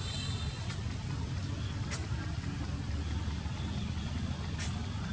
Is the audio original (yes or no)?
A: yes